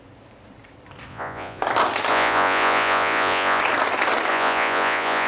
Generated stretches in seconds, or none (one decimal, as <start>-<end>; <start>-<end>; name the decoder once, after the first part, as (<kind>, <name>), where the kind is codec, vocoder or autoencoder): 1.1-1.6 (vocoder, Vocos); 2.1-3.6; 4.3-5.3